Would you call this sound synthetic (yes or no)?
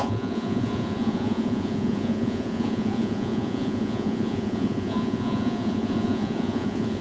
yes